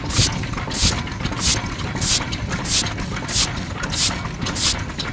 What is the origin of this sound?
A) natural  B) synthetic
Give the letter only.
A